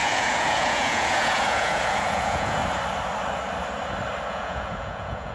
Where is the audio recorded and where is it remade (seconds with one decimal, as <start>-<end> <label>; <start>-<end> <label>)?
0.0-2.6 remade; 2.6-4.3 recorded; 4.3-5.3 remade